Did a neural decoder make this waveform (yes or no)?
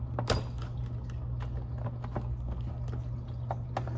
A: no